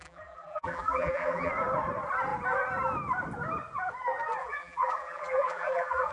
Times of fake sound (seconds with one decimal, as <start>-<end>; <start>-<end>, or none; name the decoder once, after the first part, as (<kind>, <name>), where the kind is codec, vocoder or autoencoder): 0.0-1.5 (vocoder, BigVGAN v2); 4.4-6.1